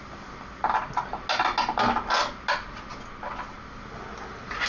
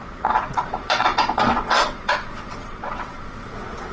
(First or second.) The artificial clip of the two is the second